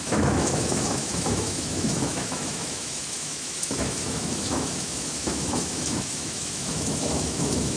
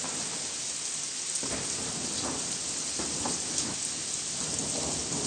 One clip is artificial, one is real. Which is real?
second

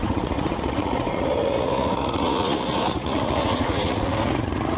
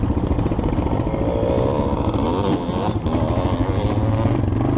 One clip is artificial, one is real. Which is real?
second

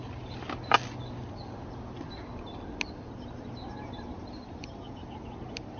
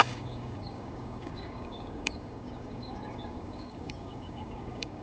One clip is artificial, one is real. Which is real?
first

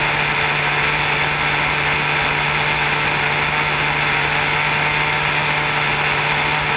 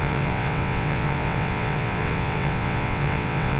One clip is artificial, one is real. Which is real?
first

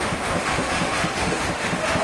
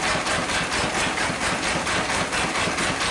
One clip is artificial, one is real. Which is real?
second